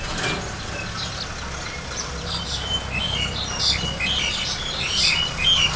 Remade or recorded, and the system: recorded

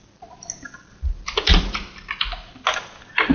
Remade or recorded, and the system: recorded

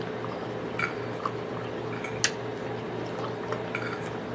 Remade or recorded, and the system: recorded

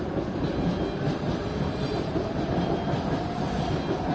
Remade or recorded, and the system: recorded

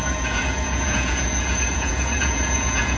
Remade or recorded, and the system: remade, vocoder, Vocos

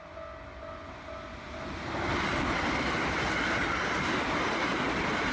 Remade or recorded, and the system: recorded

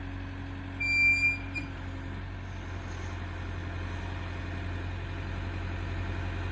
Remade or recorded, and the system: recorded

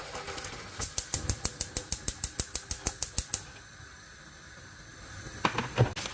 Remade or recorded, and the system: recorded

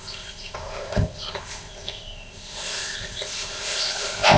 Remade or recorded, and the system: remade, codec, ZipCodec